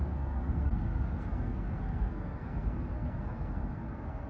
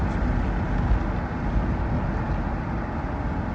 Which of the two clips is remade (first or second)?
first